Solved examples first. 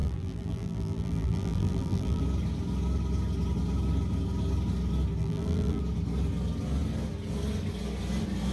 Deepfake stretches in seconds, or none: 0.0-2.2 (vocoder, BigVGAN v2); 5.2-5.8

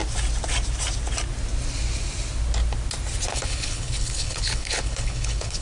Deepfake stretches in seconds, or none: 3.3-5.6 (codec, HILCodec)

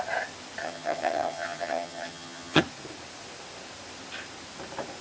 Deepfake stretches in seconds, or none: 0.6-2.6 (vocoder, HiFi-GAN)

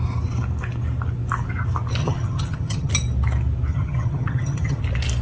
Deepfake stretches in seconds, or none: 2.0-2.9 (vocoder, HiFi-GAN); 3.7-4.8

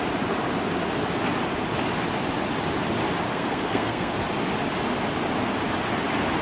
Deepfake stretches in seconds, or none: 3.3-4.1 (codec, SNAC)

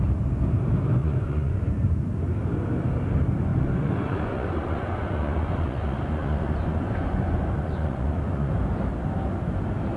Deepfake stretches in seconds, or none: 1.0-1.6 (vocoder, Vocos); 3.5-8.5

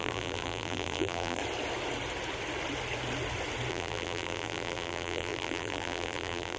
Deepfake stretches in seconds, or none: 0.0-1.4 (vocoder, BigVGAN v2); 3.7-6.6

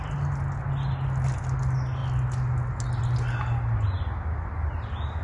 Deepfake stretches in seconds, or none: none